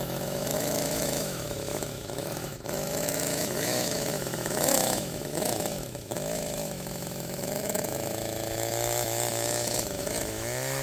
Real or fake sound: fake